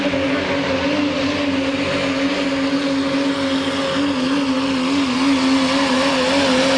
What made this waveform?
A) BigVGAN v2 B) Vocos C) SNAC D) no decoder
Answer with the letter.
D